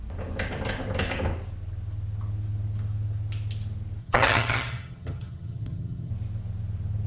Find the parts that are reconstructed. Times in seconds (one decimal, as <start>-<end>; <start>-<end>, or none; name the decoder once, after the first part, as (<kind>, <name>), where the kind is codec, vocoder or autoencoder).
4.0-6.1 (vocoder, HiFi-GAN)